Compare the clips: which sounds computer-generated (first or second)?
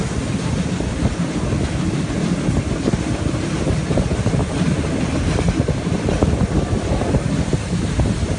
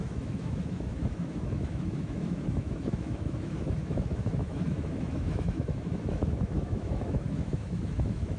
second